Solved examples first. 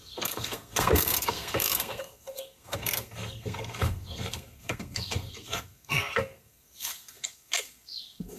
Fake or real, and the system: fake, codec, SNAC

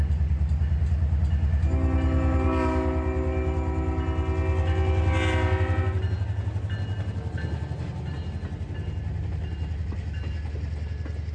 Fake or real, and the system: real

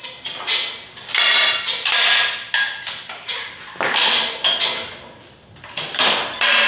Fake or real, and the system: real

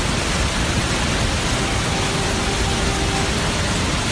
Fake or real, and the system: real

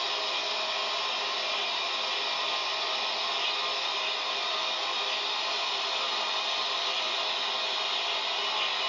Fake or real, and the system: real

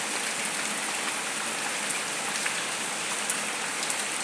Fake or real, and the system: real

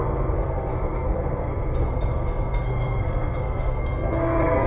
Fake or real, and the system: fake, codec, SNAC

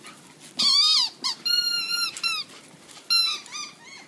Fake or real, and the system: real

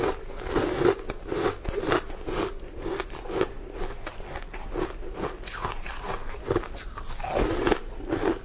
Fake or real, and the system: real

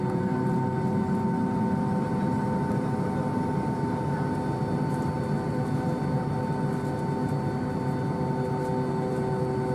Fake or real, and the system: real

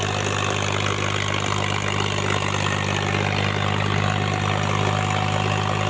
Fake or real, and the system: real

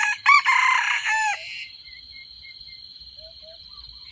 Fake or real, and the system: fake, vocoder, BigVGAN v2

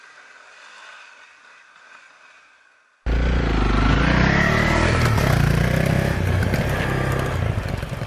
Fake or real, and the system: real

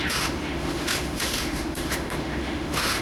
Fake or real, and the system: fake, autoencoder, DAC-VAE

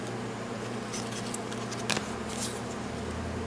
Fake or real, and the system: real